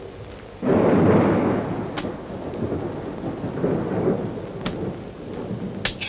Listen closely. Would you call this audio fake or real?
real